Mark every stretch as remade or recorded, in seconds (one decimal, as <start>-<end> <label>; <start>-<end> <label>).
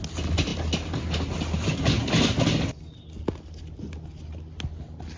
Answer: 0.0-5.2 recorded